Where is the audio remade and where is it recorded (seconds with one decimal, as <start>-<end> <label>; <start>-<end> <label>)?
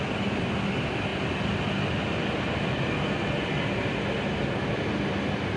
0.0-5.6 recorded